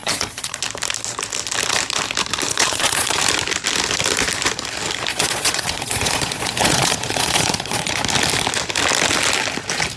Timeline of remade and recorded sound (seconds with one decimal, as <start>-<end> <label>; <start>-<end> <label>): 0.0-0.6 remade; 0.6-2.5 recorded; 2.5-3.2 remade; 3.2-5.1 recorded; 5.1-8.0 remade; 8.0-10.0 recorded